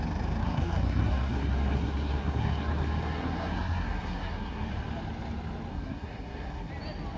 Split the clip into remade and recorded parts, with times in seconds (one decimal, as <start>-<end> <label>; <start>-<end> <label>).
0.0-0.4 recorded; 0.4-4.7 remade; 4.7-5.7 recorded; 5.7-6.7 remade; 6.7-7.2 recorded